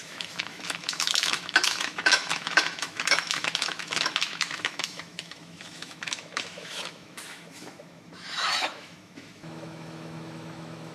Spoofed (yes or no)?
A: yes